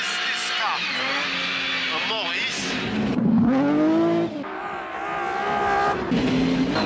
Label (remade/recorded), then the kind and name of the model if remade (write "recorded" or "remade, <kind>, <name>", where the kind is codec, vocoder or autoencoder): recorded